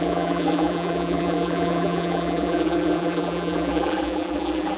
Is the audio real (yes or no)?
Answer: no